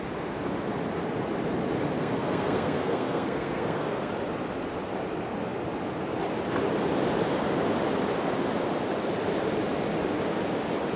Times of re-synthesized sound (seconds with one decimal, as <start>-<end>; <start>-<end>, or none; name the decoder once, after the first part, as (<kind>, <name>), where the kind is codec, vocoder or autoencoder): 2.0-4.1 (codec, SNAC)